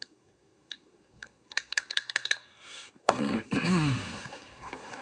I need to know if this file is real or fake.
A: fake